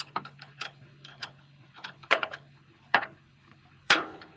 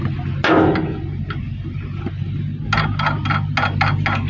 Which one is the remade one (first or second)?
first